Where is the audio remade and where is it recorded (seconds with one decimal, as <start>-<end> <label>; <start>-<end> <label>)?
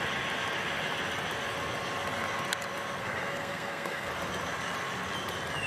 0.0-3.0 recorded; 3.0-4.1 remade; 4.1-5.7 recorded